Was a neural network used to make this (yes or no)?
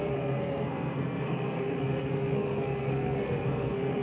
yes